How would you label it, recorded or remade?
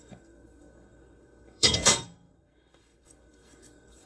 remade